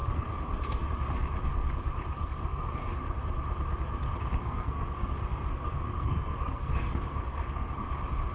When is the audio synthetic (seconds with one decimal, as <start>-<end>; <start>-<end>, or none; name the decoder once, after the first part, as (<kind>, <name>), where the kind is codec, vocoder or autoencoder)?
0.0-0.9 (codec, SNAC); 2.1-3.2; 4.4-7.9